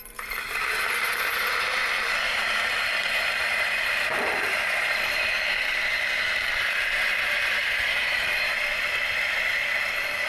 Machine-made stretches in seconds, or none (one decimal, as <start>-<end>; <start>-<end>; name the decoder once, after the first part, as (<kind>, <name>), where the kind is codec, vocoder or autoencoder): 0.0-10.3 (vocoder, BigVGAN v2)